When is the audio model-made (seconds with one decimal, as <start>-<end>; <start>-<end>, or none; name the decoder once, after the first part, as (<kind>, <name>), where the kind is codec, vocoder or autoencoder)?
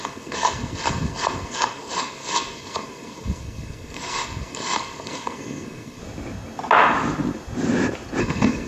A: 0.0-6.0 (codec, SNAC); 8.2-8.7